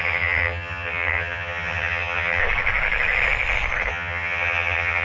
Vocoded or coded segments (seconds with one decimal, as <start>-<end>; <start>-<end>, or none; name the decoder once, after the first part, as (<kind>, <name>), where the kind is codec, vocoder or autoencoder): 0.0-2.4 (vocoder, HiFi-GAN); 3.9-5.0